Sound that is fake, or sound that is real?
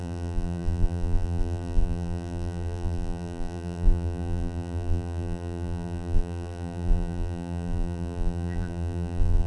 fake